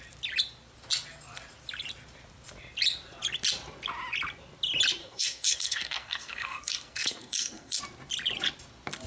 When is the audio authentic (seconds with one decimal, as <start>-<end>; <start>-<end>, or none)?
0.0-5.0; 7.8-9.1